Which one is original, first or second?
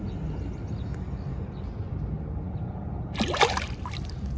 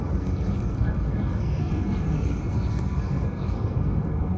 first